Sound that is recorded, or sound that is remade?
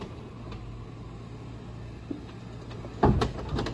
recorded